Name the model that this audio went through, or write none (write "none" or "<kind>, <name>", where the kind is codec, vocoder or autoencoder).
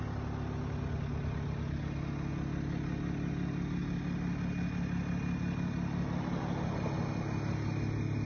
none